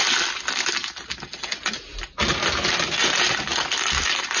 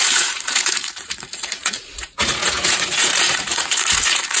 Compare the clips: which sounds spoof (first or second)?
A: second